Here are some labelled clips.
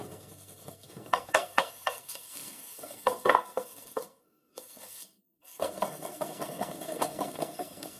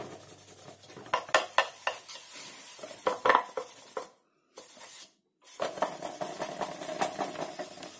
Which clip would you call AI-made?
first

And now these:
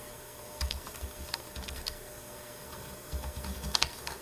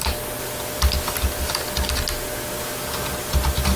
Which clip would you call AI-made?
first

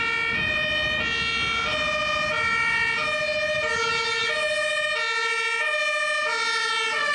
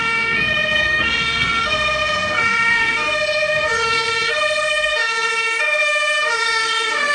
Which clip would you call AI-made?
second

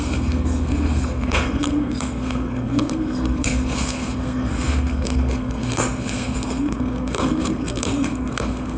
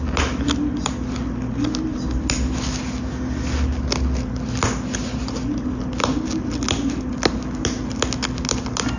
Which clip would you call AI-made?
first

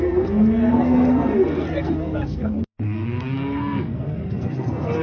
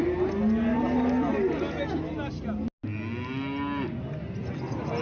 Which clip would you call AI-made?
first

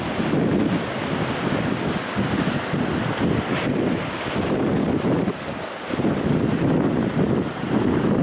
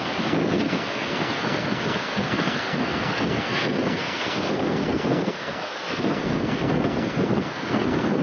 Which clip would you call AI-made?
second